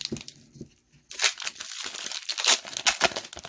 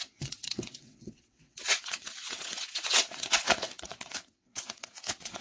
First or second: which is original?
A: first